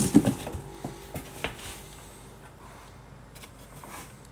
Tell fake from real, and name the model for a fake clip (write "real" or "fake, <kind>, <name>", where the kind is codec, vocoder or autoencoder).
real